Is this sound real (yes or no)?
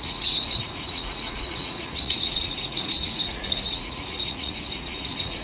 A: no